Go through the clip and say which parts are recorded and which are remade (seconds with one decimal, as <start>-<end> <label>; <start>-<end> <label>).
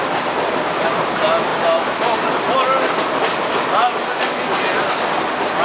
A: 0.0-5.6 recorded